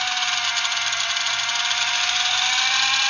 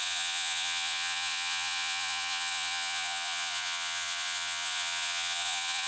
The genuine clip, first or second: first